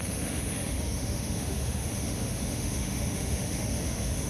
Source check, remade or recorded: remade